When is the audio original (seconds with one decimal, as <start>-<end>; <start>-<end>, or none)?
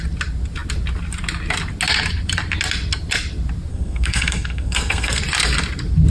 0.0-3.7; 5.2-6.1